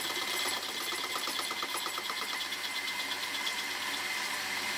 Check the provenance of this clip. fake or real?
real